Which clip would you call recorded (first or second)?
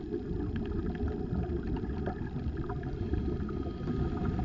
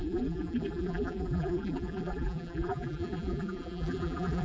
first